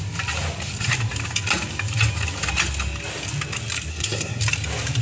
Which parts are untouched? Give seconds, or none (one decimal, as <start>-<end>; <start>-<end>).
0.0-3.9; 4.4-5.0

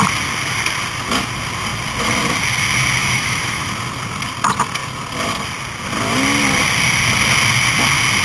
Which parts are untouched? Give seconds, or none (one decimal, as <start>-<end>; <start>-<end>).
0.0-3.0; 3.7-8.2

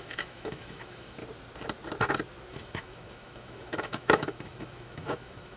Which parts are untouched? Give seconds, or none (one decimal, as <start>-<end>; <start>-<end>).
1.2-2.5